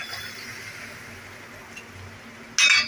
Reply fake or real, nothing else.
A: real